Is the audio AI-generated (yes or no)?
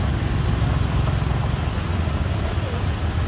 no